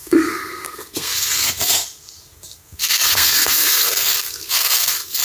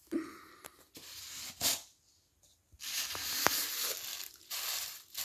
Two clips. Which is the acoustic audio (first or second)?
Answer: second